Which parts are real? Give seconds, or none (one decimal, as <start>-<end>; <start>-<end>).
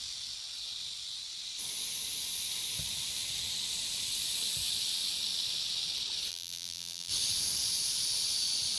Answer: 0.0-6.3; 7.1-8.8